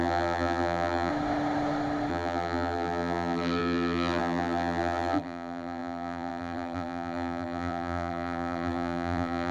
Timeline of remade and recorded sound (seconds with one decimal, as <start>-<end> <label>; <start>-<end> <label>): 0.0-1.1 remade; 1.1-2.1 recorded; 2.1-9.5 remade